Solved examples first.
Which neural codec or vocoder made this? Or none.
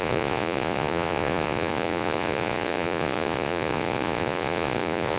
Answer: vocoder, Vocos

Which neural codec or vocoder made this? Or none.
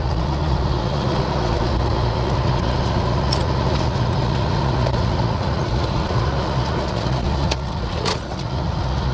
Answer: vocoder, Vocos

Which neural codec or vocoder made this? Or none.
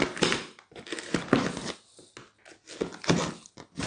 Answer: none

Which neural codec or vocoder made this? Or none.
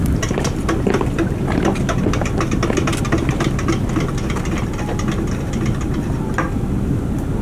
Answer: none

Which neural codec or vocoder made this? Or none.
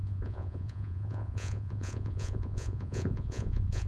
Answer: vocoder, Vocos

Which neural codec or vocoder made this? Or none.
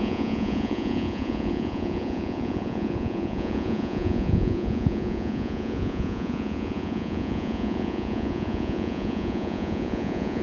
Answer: vocoder, Vocos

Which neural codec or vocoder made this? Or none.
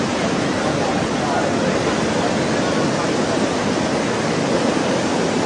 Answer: none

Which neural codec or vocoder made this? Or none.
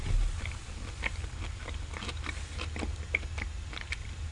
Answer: none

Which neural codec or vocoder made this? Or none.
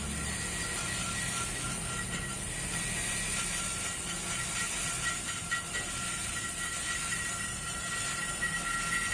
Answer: none